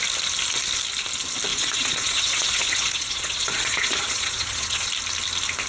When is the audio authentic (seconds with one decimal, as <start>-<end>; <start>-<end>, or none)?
0.0-1.5; 4.9-5.7